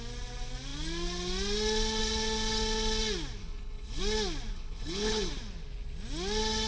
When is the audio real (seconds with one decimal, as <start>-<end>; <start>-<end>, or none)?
0.0-3.4; 4.0-4.5; 5.3-6.7